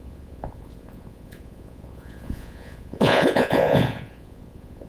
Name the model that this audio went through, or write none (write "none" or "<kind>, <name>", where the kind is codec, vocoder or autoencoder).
vocoder, Vocos